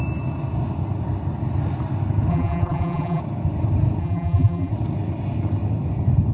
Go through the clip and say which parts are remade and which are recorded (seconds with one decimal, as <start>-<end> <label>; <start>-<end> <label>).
0.0-2.3 recorded; 2.3-3.2 remade; 3.2-4.0 recorded; 4.0-4.7 remade; 4.7-6.3 recorded